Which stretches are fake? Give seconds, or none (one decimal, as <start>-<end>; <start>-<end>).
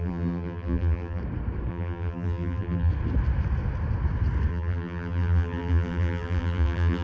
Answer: 0.0-1.2; 1.7-2.9; 4.5-7.0